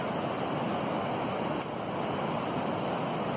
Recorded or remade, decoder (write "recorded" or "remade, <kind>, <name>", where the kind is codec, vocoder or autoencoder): recorded